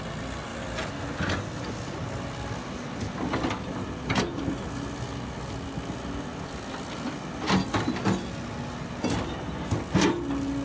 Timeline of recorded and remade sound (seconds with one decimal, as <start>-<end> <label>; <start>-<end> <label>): 0.0-10.6 recorded